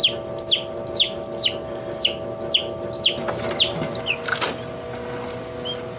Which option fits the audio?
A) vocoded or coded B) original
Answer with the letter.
B